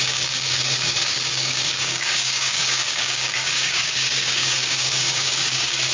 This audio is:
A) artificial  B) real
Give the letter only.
A